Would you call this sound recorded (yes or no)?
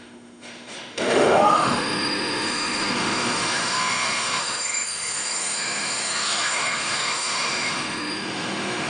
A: no